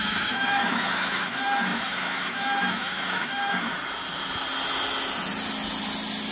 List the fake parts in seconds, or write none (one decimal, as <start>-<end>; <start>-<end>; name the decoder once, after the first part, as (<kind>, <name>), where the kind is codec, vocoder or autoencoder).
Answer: 0.0-3.8 (autoencoder, DAC-VAE)